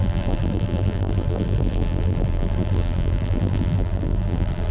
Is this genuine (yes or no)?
no